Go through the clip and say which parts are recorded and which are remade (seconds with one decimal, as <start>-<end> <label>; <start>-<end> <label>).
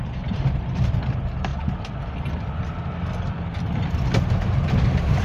0.0-5.2 recorded